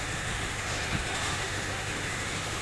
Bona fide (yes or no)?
no